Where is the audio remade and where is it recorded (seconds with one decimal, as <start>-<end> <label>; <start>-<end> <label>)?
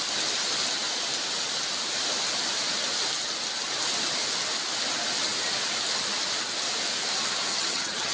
0.0-7.5 recorded; 7.5-8.1 remade